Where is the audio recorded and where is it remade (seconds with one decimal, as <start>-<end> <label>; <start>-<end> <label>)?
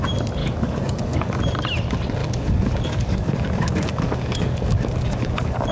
0.0-0.4 recorded; 0.4-1.4 remade; 1.4-2.2 recorded; 2.2-5.7 remade